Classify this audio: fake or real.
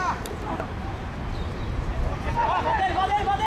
fake